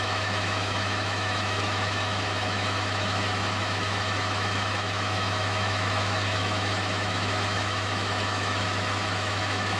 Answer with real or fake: fake